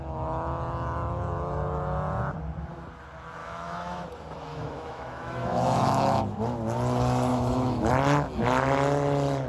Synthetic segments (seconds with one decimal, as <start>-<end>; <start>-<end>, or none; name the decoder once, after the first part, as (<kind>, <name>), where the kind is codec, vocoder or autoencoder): 3.4-4.0 (autoencoder, DAC-VAE); 4.5-6.2; 7.3-7.9